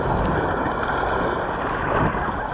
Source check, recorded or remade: recorded